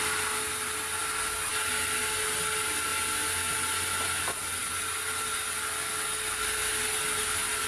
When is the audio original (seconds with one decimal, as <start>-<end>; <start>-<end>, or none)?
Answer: 0.0-7.7

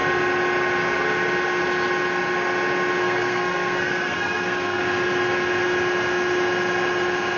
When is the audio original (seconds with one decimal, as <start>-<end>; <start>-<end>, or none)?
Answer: 0.0-3.0; 4.8-7.4

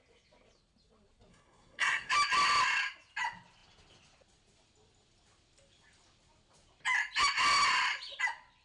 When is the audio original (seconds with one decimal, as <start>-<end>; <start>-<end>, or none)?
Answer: 0.0-1.3; 2.1-8.6